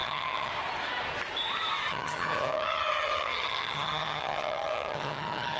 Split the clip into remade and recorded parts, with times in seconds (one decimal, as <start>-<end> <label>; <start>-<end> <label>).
0.0-0.5 remade; 0.5-1.9 recorded; 1.9-5.6 remade